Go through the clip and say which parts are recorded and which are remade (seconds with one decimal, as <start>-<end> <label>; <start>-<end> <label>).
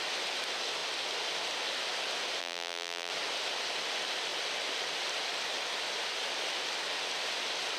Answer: 0.0-2.4 recorded; 2.4-3.1 remade; 3.1-7.8 recorded